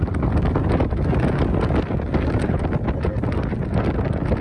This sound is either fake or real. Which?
real